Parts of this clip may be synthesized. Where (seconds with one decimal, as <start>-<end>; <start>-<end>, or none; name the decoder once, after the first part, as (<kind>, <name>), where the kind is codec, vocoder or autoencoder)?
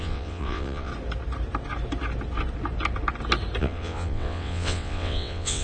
0.0-0.9 (vocoder, WaveNeXt); 3.6-5.6